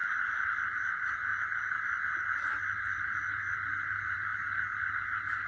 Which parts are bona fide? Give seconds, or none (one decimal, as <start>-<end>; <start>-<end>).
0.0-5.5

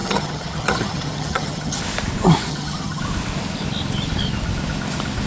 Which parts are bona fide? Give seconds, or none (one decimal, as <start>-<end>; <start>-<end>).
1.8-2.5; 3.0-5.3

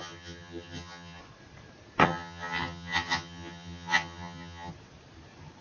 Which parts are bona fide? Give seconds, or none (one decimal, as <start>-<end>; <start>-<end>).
1.2-2.0; 4.7-5.6